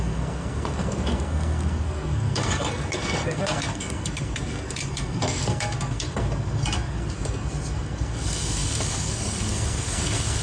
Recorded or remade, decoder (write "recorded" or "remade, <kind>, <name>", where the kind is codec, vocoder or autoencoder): remade, codec, SNAC